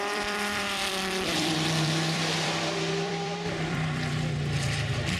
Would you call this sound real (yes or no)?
no